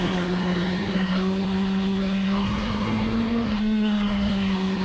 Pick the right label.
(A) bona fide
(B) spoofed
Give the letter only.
B